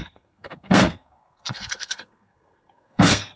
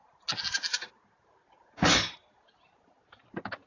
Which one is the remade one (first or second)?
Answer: first